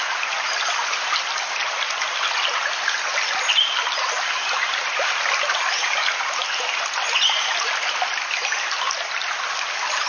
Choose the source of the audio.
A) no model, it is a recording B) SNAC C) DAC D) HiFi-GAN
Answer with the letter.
A